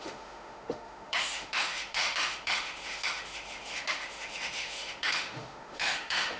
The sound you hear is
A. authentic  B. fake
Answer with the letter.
B